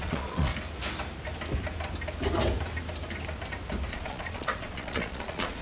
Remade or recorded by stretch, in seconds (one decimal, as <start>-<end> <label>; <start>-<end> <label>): 0.0-0.5 remade; 0.5-3.9 recorded; 3.9-5.6 remade